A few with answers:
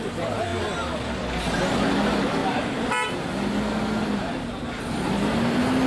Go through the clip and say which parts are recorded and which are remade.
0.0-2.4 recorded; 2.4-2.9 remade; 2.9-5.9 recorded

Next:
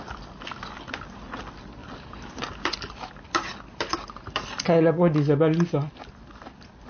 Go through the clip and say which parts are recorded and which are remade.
0.0-6.9 recorded

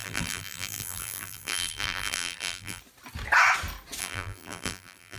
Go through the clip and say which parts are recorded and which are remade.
0.0-2.8 remade; 2.8-4.0 recorded; 4.0-5.2 remade

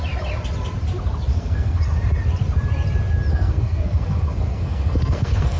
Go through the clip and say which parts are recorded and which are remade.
0.0-1.3 recorded; 1.3-1.8 remade; 1.8-3.3 recorded; 3.3-5.6 remade